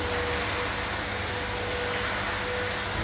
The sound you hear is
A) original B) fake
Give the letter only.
A